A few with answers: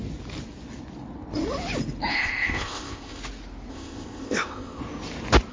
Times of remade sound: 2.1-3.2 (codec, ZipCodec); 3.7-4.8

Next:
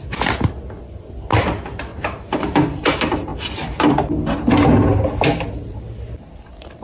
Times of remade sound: 1.9-2.9 (vocoder, BigVGAN v2)

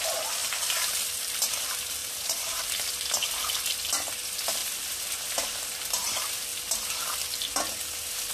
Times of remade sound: 0.4-1.6 (vocoder, BigVGAN v2); 2.0-2.6

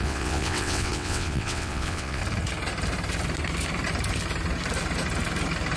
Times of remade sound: 0.0-2.2 (vocoder, WaveNeXt)

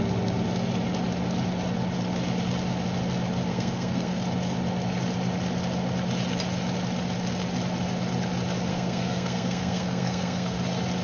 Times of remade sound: 3.5-4.2 (codec, SNAC); 8.7-10.6

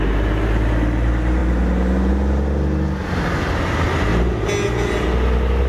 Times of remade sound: none